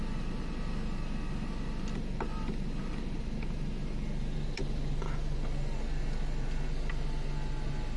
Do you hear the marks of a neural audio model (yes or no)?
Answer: no